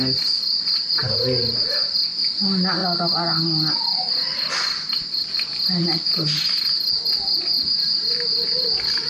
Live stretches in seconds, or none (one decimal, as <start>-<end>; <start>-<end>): 0.0-9.1